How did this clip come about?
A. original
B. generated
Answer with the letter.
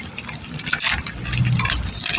A